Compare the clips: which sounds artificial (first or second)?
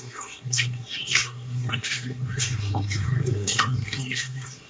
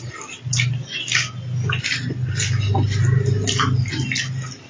first